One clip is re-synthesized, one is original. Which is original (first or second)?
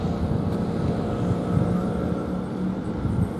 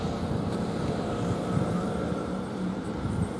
first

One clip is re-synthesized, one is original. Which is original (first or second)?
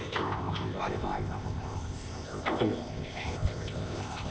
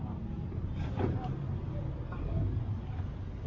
second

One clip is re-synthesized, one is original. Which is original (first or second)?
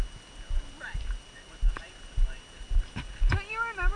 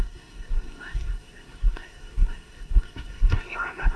first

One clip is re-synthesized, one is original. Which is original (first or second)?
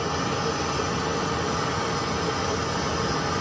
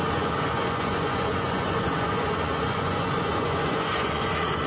first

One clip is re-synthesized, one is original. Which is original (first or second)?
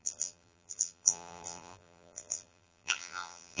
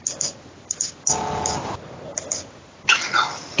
second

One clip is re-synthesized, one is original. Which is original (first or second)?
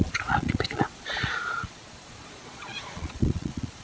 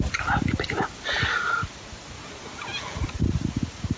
second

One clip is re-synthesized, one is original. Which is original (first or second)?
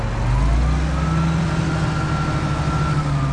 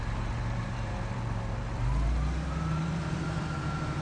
first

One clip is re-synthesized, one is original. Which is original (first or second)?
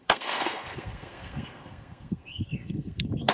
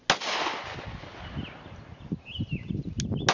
second